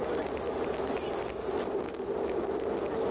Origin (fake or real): real